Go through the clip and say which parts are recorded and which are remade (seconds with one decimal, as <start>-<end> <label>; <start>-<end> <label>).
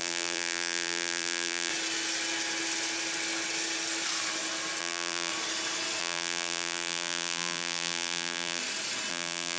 0.0-1.7 remade; 1.7-4.8 recorded; 4.8-5.3 remade; 5.3-6.0 recorded; 6.0-8.6 remade; 8.6-9.1 recorded; 9.1-9.6 remade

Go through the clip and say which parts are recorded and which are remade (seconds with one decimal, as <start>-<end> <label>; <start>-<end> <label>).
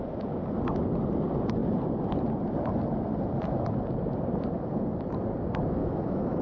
0.0-5.8 recorded; 5.8-6.4 remade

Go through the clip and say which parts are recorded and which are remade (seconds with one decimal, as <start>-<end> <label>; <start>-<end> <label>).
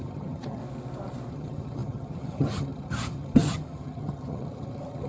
0.0-0.6 remade; 0.6-1.3 recorded; 1.3-5.1 remade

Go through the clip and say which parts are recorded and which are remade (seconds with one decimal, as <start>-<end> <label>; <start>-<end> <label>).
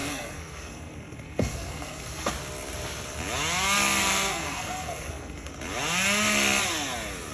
0.0-2.3 remade; 2.3-4.0 recorded; 4.0-5.5 remade; 5.5-7.3 recorded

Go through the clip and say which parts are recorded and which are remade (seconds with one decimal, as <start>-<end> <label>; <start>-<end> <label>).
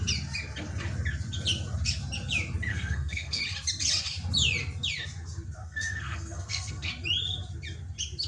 0.0-2.7 recorded; 2.7-3.4 remade; 3.4-5.6 recorded; 5.6-6.9 remade; 6.9-8.3 recorded